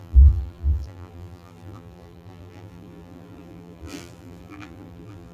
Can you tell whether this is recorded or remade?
remade